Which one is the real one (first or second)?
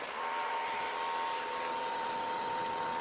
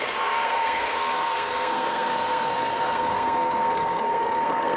first